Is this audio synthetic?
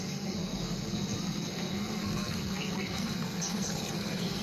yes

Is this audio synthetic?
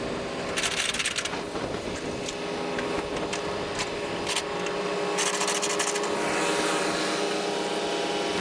no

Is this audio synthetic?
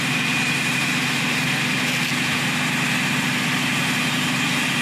no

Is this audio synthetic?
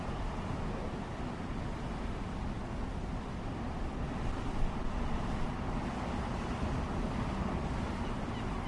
no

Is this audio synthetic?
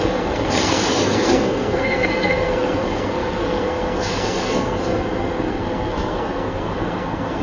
yes